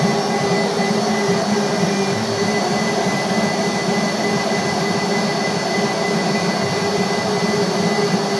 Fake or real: real